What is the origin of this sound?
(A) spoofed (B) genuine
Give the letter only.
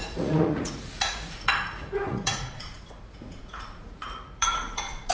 A